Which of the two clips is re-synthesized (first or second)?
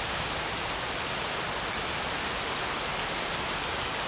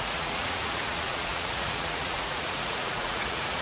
second